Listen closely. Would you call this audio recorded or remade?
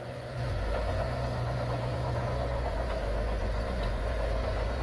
remade